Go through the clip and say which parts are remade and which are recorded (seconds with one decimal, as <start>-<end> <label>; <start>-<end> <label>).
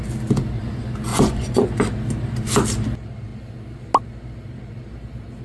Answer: 0.0-1.1 recorded; 1.1-1.6 remade; 1.6-5.4 recorded